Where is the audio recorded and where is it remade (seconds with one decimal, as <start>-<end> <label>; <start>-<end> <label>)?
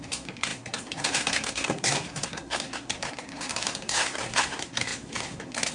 0.0-5.7 remade